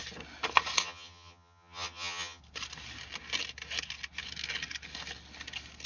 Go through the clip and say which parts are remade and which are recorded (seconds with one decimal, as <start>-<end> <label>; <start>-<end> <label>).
0.0-0.8 recorded; 0.8-2.4 remade; 2.4-5.9 recorded